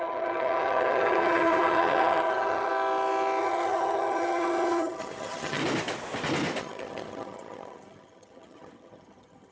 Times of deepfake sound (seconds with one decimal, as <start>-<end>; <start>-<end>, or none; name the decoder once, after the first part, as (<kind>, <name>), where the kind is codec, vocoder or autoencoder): 0.0-2.7 (vocoder, HiFi-GAN); 3.4-5.6; 6.6-9.5